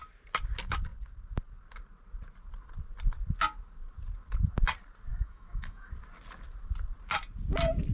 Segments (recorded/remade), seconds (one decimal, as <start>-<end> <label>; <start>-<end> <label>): 0.0-5.1 recorded; 5.1-5.9 remade; 5.9-7.9 recorded